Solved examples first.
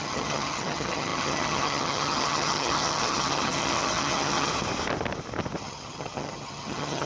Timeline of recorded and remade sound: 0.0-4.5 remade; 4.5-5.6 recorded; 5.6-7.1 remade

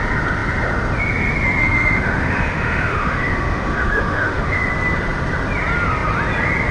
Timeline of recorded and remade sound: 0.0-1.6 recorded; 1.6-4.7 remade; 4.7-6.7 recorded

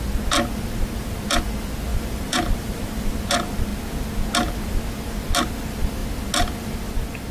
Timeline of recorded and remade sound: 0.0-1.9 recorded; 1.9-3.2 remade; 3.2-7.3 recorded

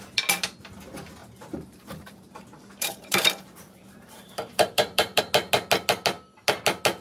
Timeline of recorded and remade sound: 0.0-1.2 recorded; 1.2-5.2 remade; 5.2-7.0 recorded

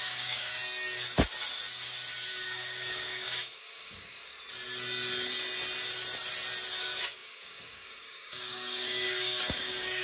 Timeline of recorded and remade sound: 0.0-0.5 remade; 0.5-2.3 recorded; 2.3-4.3 remade; 4.3-6.8 recorded; 6.8-10.0 remade

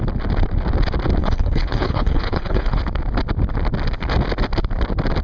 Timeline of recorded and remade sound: 0.0-1.2 recorded; 1.2-2.8 remade; 2.8-5.2 recorded

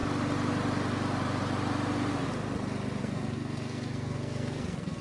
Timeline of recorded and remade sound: 0.0-3.0 recorded; 3.0-5.0 remade